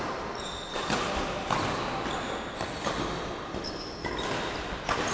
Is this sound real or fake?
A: real